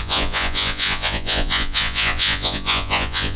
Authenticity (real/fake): fake